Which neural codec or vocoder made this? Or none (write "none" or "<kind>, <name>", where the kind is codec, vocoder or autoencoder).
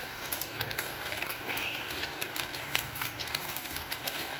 codec, DAC